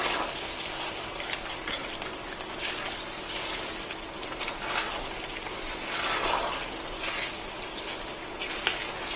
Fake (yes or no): no